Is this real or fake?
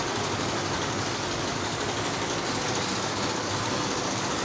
fake